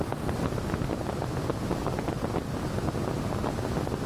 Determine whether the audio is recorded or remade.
recorded